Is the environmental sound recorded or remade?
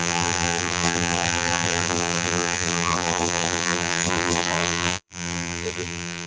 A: remade